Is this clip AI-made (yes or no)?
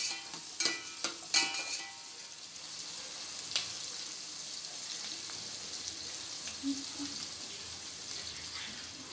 no